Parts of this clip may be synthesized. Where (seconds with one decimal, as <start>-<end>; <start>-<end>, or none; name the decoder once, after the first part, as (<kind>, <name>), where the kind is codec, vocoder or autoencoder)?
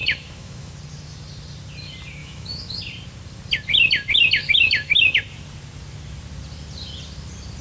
0.0-0.7 (autoencoder, DAC-VAE); 2.2-2.8; 4.4-5.2